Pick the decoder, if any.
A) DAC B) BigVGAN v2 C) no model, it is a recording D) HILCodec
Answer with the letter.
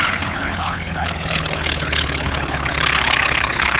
D